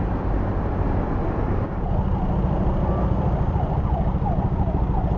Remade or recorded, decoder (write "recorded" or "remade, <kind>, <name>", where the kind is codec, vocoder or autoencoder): recorded